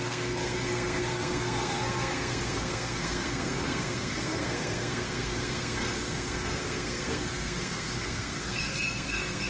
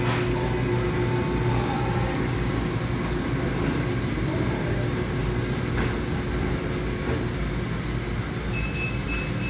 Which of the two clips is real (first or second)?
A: second